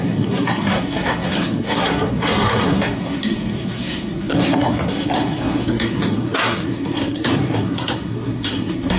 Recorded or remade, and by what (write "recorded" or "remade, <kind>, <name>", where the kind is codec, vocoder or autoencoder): remade, codec, SNAC